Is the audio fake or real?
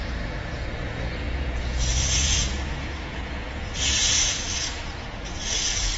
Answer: fake